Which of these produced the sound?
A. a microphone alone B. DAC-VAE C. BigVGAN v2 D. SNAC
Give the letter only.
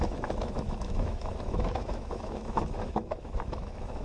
B